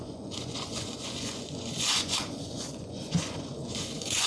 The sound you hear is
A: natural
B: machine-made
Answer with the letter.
B